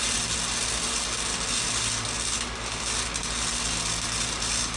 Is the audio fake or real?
real